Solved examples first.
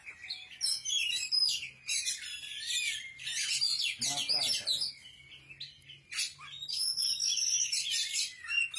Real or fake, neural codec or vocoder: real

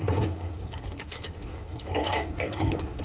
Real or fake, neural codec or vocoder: fake, codec, SNAC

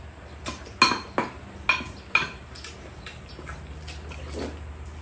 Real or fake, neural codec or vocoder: real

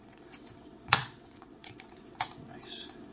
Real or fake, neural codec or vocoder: fake, vocoder, WaveNeXt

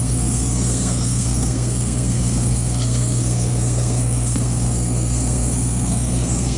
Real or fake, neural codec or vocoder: fake, codec, SNAC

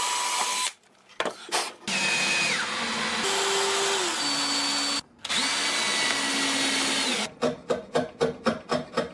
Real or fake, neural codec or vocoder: real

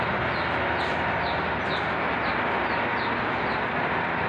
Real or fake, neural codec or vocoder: real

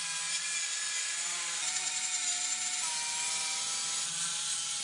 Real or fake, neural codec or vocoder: real